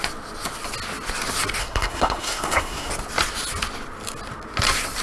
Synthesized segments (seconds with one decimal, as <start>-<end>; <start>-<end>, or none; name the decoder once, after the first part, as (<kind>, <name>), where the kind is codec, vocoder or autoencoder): 1.6-2.9 (codec, SNAC)